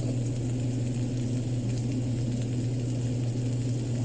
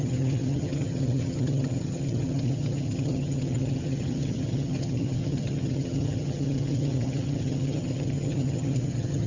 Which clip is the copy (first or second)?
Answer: second